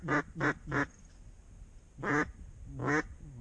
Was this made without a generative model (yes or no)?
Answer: yes